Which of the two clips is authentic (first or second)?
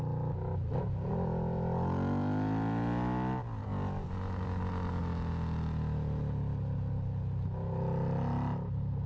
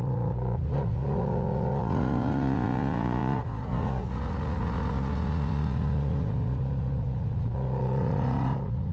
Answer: first